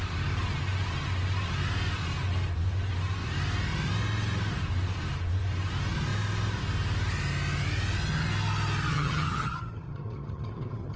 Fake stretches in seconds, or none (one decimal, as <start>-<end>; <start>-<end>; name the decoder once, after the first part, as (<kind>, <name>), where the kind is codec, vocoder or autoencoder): 8.9-11.0 (vocoder, HiFi-GAN)